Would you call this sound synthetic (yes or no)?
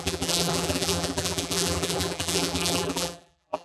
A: yes